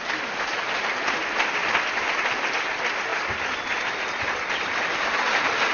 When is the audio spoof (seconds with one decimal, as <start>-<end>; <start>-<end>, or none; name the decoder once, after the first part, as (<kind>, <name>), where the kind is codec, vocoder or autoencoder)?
none